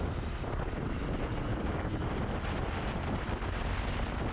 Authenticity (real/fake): fake